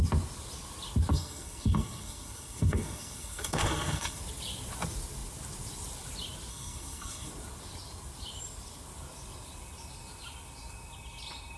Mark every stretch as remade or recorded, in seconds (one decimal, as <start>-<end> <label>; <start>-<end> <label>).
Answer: 0.0-1.1 recorded; 1.1-4.2 remade; 4.2-6.5 recorded; 6.5-7.3 remade; 7.3-11.6 recorded